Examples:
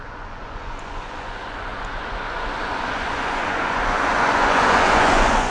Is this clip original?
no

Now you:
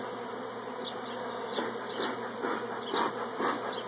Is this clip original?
yes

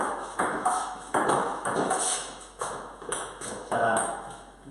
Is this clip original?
no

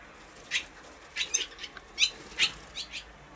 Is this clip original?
yes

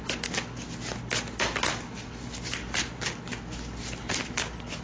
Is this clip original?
yes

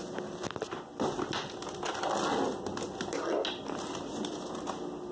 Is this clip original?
yes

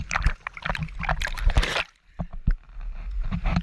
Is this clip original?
yes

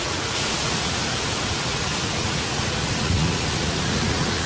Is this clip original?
no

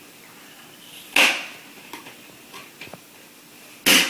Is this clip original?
yes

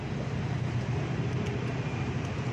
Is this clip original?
yes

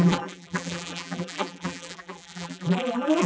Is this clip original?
no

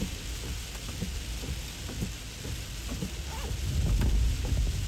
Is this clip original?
yes